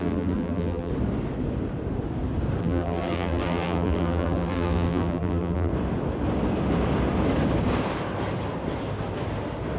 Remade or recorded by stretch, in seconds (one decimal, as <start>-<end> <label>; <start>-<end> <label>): 0.0-0.9 remade; 0.9-2.6 recorded; 2.6-5.7 remade; 5.7-9.8 recorded